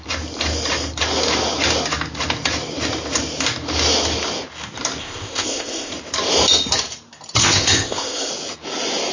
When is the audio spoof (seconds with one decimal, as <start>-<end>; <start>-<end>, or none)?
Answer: 5.0-5.9; 7.4-8.3